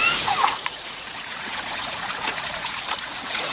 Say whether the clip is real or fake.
fake